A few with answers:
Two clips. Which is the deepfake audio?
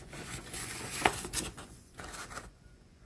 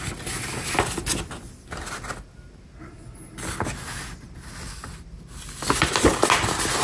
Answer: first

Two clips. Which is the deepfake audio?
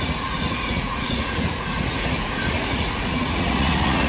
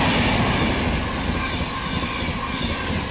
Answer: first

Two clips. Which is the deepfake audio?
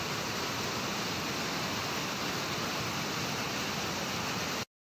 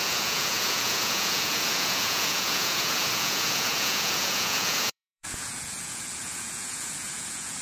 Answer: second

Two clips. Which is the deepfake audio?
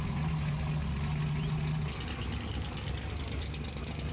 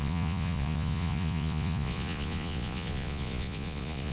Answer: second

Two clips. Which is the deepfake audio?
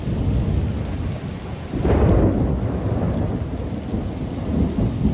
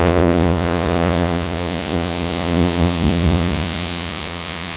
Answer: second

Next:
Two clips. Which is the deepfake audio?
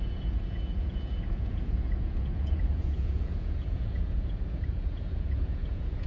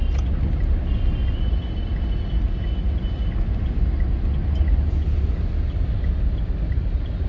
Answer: first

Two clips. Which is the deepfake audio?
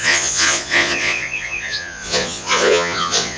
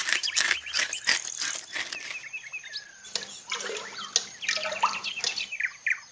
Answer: first